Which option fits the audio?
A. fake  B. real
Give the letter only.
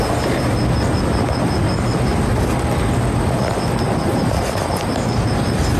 B